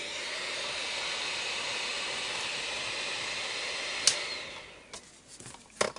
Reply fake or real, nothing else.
real